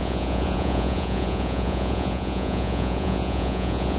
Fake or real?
fake